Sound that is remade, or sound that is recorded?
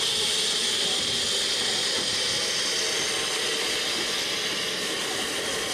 recorded